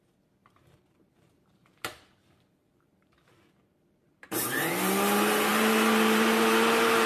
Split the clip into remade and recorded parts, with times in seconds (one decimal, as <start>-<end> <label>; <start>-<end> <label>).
0.0-0.4 recorded; 0.4-4.7 remade; 4.7-5.5 recorded; 5.5-7.1 remade